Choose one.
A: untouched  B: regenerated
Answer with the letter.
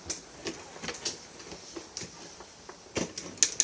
A